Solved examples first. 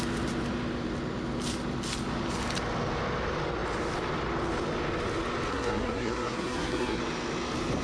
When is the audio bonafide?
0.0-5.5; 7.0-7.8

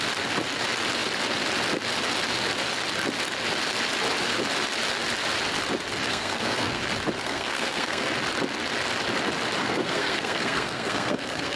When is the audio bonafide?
0.0-6.1; 6.8-7.2; 8.1-9.6

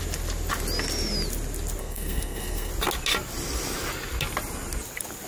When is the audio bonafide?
0.0-1.8; 2.7-5.3

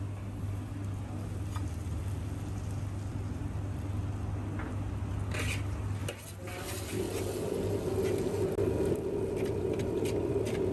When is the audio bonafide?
0.0-10.7